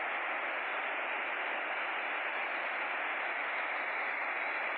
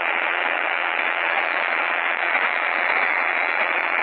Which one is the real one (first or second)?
first